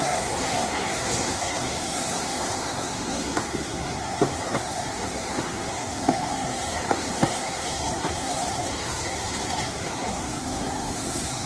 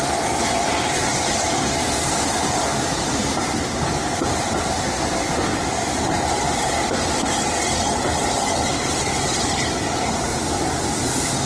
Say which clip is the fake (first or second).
first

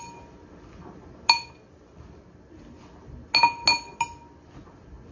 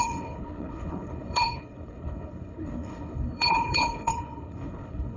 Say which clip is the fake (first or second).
second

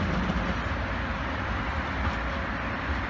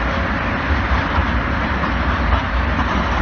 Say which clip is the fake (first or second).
second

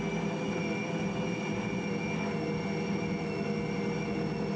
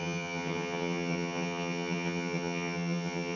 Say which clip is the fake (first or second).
second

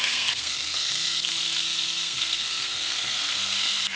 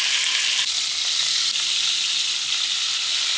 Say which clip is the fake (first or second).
first